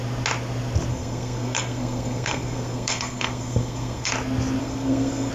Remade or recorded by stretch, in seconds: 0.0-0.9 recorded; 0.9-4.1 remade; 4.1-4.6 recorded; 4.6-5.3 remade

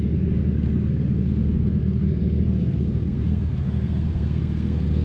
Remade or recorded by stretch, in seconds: 0.0-5.0 remade